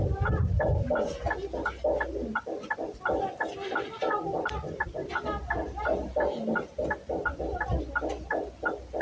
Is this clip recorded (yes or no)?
yes